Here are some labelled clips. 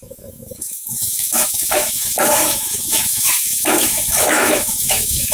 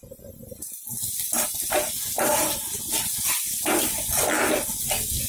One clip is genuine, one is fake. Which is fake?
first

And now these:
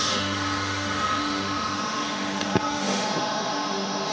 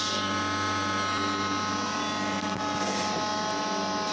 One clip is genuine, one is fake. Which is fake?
first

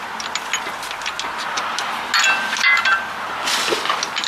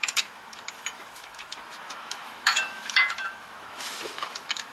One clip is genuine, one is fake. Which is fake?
second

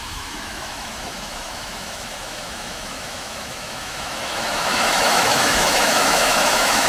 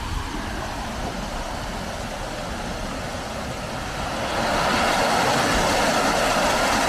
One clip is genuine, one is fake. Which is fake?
first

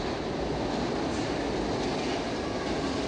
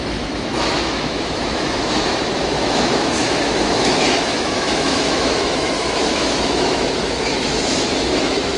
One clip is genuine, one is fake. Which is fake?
second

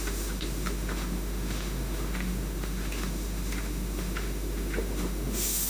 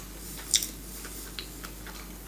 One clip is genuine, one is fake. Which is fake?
first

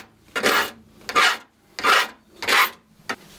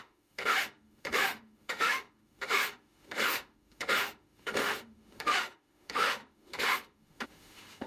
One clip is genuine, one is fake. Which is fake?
second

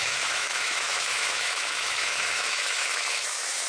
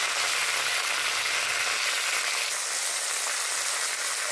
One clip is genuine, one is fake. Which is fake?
first